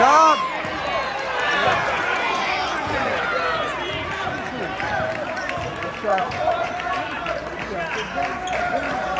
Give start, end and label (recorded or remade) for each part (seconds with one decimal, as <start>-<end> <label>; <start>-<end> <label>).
0.0-1.6 recorded; 1.6-3.2 remade; 3.2-6.1 recorded; 6.1-6.7 remade; 6.7-9.2 recorded